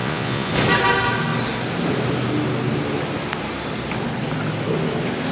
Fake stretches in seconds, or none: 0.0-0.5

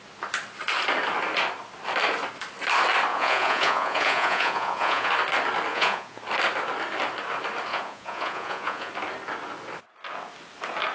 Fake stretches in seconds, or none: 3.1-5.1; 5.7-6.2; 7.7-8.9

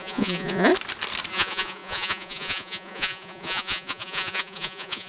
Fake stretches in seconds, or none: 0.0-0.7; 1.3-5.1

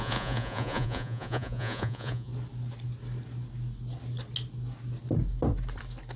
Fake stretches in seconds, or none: 0.0-2.3

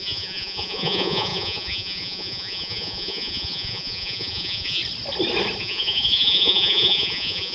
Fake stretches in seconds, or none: 0.0-4.8; 5.6-7.5

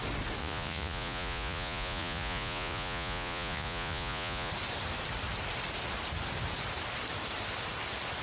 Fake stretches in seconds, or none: 0.4-4.5

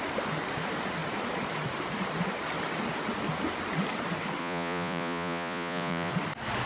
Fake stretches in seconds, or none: 4.4-6.1